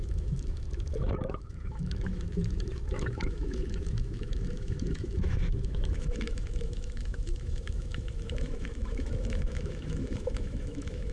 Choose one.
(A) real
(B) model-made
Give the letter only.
B